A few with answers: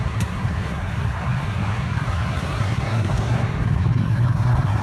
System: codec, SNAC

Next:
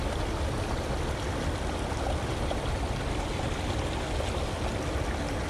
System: none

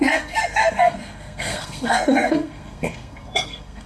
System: codec, SNAC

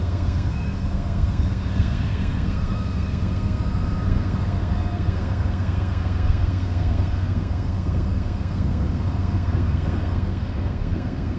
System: codec, SNAC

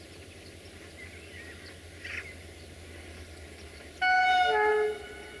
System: none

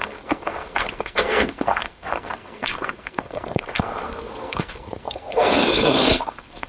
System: codec, SNAC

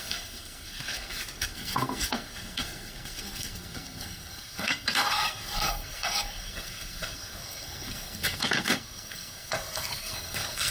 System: codec, SNAC